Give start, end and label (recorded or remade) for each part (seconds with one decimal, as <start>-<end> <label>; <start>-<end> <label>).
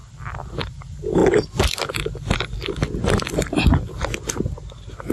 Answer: 0.0-0.7 remade; 0.7-5.1 recorded